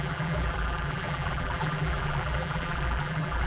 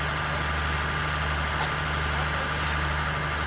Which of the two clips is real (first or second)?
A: second